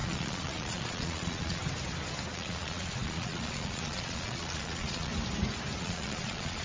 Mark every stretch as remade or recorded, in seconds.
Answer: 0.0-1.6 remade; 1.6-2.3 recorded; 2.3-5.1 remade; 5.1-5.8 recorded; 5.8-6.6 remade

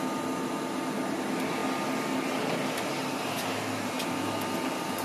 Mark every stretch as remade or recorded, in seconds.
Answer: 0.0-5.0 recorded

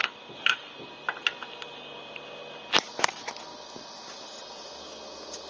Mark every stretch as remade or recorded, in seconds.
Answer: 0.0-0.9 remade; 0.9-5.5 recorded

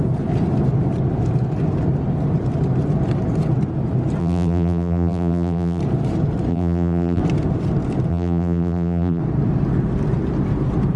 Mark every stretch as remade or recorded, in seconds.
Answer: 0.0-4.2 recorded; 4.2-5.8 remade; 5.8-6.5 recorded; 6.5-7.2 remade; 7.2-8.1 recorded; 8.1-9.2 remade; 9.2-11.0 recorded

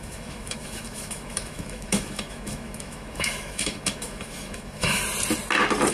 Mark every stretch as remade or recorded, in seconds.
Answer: 0.0-5.0 remade; 5.0-5.9 recorded